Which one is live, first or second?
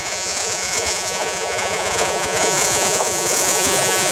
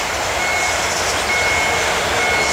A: second